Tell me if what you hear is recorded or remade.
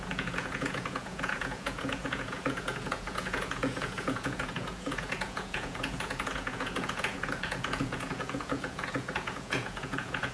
remade